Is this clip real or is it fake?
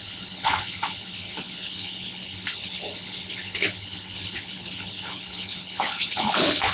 fake